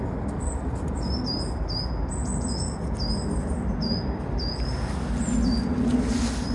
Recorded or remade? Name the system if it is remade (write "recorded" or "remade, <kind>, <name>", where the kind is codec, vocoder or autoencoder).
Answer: recorded